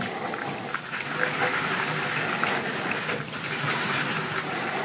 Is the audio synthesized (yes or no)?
no